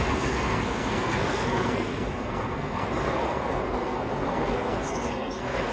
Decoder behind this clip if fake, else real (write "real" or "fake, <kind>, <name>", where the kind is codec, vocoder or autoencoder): fake, codec, SNAC